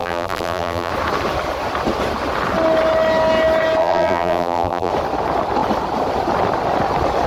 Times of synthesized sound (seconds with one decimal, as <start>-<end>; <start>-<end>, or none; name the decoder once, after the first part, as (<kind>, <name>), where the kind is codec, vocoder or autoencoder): 0.0-0.9 (vocoder, BigVGAN v2); 3.8-4.9